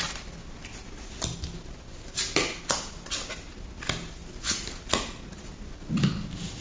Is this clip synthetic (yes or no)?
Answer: no